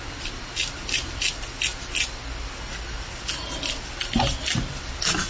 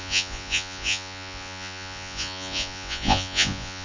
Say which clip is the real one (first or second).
first